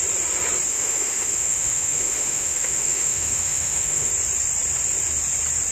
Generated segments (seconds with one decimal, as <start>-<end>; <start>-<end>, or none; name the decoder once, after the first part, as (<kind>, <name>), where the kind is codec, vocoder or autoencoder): 0.7-4.1 (autoencoder, DAC-VAE)